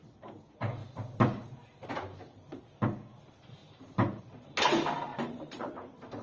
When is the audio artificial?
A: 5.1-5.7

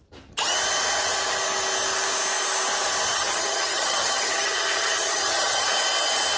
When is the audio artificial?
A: 3.1-5.7